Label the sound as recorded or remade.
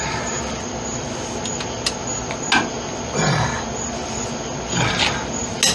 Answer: recorded